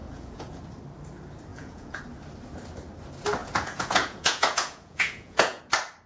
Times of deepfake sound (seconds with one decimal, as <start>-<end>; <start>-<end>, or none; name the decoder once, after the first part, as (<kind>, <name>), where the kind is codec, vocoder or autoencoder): 0.0-0.6 (vocoder, Vocos); 1.5-2.0; 3.4-5.6